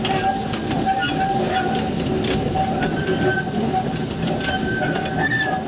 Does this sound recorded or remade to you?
recorded